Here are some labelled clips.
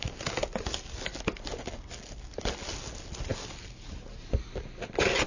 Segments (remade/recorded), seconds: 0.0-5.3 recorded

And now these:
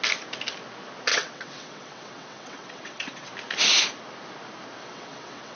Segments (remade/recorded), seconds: 0.0-1.1 recorded; 1.1-3.3 remade; 3.3-4.8 recorded; 4.8-5.6 remade

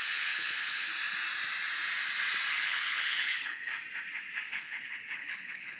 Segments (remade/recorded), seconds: 0.0-0.9 remade; 0.9-2.5 recorded; 2.5-3.7 remade; 3.7-4.5 recorded; 4.5-5.8 remade

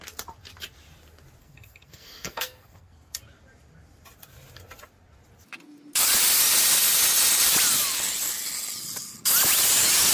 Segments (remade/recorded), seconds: 0.0-1.4 recorded; 1.4-3.2 remade; 3.2-10.1 recorded

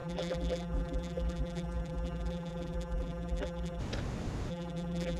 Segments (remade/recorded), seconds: 0.0-3.8 remade; 3.8-4.5 recorded; 4.5-5.2 remade

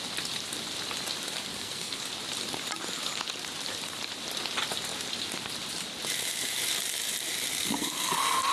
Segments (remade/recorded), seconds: 0.0-1.5 recorded; 1.5-2.0 remade; 2.0-7.5 recorded; 7.5-8.5 remade

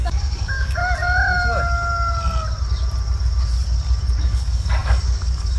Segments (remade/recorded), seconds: 0.0-0.8 remade; 0.8-4.2 recorded; 4.2-5.6 remade